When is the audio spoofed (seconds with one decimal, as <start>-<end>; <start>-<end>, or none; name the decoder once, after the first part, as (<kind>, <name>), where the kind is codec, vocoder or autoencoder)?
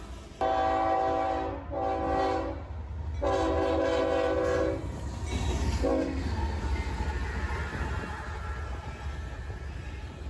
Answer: 5.9-6.6 (codec, SNAC)